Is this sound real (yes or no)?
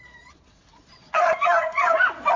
no